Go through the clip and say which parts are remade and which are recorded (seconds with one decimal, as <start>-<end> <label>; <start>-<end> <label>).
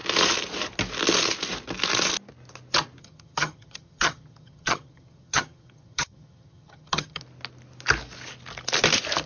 0.0-3.0 recorded; 3.0-7.2 remade; 7.2-9.3 recorded